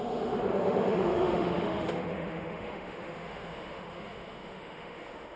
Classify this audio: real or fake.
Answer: fake